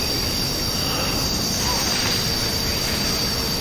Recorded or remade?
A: recorded